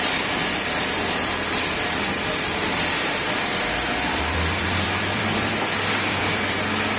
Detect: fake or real fake